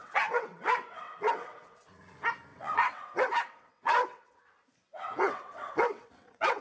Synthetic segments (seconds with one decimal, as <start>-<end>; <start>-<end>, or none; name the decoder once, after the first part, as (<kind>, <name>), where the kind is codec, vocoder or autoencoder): 0.0-1.9 (vocoder, WaveNeXt); 2.5-4.4; 4.9-6.6